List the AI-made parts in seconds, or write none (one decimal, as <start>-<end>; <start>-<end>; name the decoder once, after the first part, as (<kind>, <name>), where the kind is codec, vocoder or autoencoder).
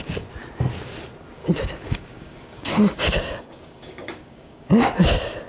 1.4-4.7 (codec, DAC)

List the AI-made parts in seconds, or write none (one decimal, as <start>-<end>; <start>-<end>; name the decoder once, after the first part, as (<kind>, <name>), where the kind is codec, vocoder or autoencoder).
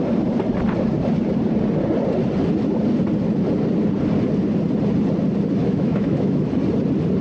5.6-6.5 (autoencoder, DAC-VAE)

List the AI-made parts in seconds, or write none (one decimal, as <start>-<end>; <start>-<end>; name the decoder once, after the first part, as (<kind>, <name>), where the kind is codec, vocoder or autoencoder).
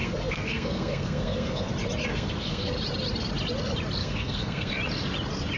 0.0-1.7 (codec, SNAC); 2.1-2.7; 4.0-4.7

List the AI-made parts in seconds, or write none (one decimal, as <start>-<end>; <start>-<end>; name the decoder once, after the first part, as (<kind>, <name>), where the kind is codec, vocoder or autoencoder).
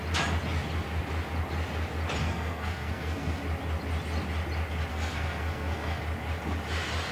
2.2-3.4 (codec, SNAC); 4.9-6.0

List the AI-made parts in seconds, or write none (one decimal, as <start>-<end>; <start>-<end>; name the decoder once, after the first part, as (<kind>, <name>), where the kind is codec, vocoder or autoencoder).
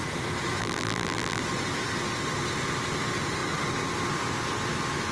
0.6-1.4 (vocoder, BigVGAN v2)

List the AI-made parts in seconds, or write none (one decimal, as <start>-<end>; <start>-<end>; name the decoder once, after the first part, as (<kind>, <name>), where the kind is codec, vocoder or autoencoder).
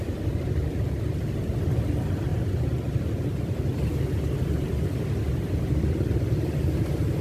none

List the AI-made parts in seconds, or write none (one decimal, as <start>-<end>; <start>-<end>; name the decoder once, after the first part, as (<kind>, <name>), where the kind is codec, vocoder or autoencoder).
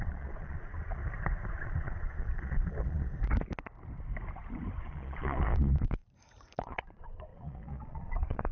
0.0-1.0 (vocoder, Vocos); 1.5-3.1; 4.8-6.0; 6.6-8.5